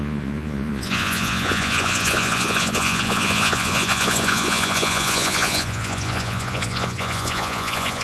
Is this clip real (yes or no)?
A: no